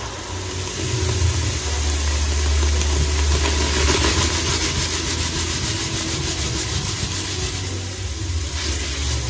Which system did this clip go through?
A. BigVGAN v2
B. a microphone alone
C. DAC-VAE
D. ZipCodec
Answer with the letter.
B